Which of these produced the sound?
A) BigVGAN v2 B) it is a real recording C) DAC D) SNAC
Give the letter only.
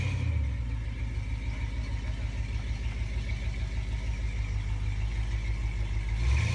B